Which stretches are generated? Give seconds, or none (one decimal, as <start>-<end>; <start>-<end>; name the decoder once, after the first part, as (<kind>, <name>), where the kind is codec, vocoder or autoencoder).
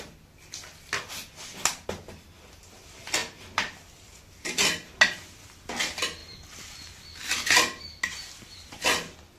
none